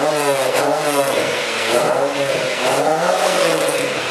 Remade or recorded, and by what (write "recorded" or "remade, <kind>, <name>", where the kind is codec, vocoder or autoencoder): remade, codec, SNAC